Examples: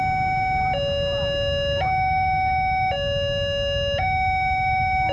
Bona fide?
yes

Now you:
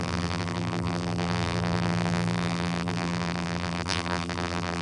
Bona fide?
no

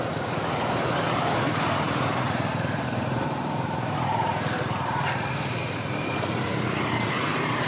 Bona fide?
no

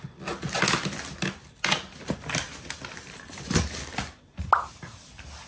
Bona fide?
yes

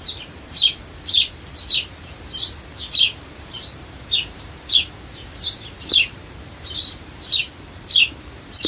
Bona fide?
no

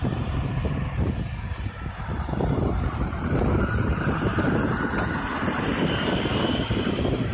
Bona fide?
no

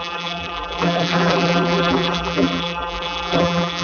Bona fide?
no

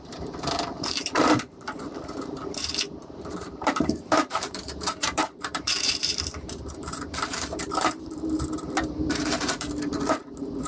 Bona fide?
no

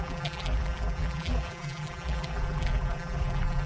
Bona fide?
no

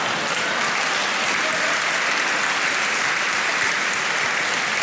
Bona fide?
yes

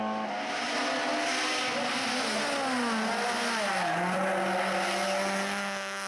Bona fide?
yes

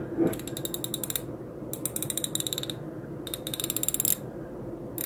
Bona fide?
yes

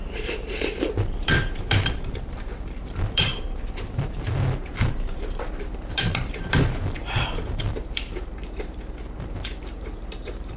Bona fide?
no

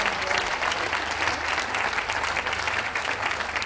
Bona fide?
yes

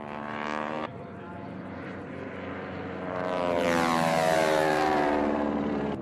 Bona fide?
no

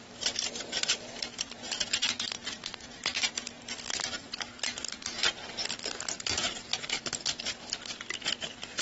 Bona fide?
yes